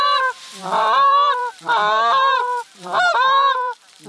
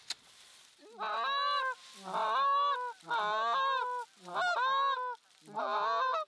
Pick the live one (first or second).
second